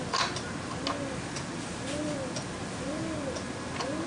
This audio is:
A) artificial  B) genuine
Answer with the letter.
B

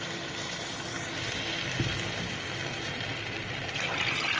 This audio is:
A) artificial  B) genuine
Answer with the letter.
B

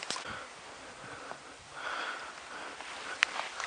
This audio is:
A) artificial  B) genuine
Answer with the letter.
B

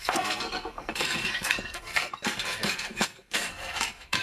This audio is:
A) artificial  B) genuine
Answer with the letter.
A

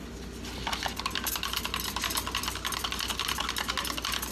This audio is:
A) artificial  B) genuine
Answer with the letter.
B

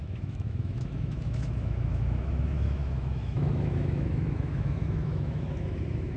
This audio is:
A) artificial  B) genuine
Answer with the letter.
A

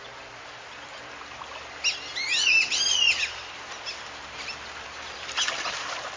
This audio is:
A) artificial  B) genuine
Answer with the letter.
A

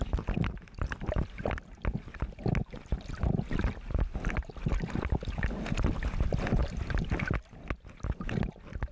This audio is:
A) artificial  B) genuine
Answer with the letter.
B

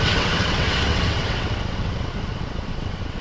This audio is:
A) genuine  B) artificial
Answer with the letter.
B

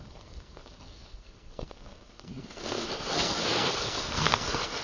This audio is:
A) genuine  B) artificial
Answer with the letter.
B